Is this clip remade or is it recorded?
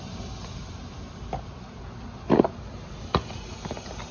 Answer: recorded